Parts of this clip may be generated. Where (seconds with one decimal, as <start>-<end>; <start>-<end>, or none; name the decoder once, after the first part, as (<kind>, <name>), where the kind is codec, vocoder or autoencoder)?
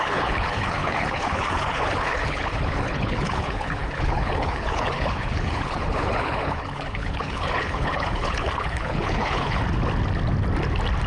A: 0.0-9.6 (codec, HILCodec)